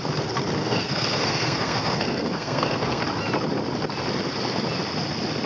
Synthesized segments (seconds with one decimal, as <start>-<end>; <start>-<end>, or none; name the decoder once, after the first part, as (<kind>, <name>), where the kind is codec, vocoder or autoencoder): 0.6-3.0 (codec, SNAC)

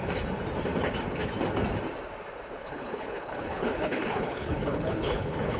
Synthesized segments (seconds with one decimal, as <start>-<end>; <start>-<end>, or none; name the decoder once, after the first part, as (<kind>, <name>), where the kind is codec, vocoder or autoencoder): 2.6-5.6 (codec, HILCodec)

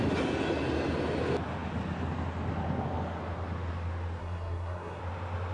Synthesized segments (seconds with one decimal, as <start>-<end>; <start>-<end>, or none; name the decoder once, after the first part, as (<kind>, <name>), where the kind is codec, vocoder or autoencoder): 4.2-5.0 (codec, SNAC)